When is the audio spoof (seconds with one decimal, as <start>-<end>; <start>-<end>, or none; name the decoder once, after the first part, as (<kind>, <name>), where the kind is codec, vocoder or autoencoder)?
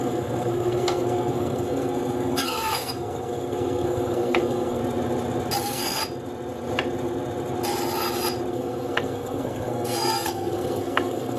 0.0-4.8 (codec, SNAC); 5.6-6.0; 8.5-11.4